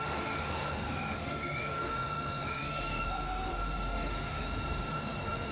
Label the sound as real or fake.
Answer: fake